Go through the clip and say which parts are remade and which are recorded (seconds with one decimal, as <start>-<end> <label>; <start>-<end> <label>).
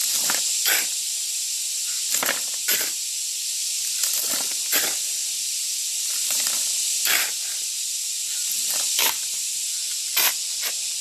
0.0-11.0 recorded